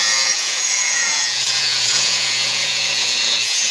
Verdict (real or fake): fake